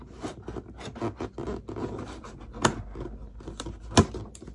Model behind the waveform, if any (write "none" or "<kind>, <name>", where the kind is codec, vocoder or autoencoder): none